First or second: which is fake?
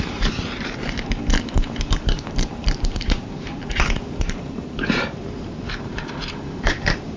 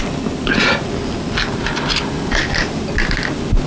first